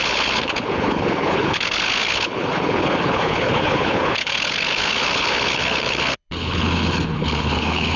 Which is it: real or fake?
fake